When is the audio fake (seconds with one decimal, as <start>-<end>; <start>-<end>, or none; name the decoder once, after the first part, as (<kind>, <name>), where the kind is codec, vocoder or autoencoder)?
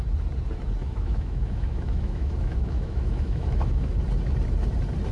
0.8-3.9 (autoencoder, DAC-VAE)